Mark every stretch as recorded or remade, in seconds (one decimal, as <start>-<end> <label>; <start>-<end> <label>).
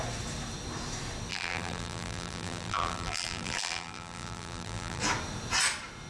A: 0.0-1.3 recorded; 1.3-5.0 remade; 5.0-6.1 recorded